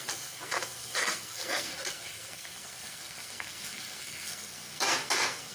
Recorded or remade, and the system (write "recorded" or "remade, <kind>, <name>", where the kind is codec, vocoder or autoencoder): remade, codec, SNAC